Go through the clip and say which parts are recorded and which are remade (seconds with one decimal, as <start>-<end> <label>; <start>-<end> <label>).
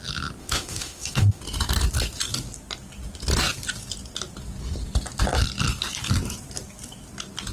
0.0-0.4 recorded; 0.4-1.4 remade; 1.4-7.5 recorded